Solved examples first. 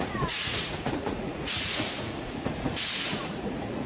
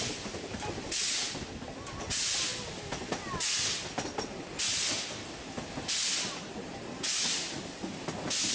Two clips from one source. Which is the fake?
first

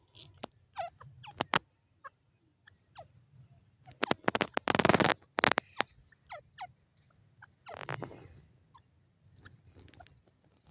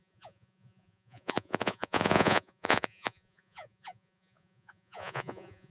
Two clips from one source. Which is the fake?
second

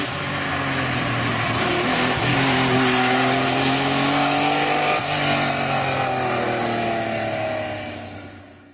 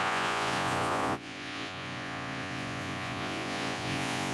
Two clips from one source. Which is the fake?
second